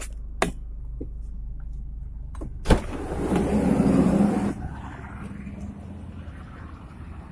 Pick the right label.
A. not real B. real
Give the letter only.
B